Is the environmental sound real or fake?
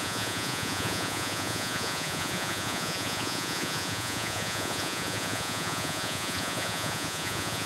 fake